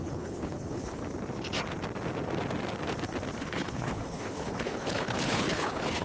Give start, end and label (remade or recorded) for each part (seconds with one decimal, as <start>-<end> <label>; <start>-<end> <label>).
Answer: 0.0-1.0 remade; 1.0-3.4 recorded; 3.4-6.0 remade